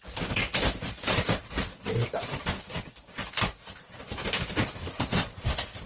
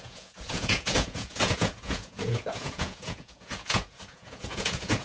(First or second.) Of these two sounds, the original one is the first